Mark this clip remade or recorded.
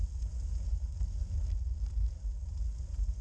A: recorded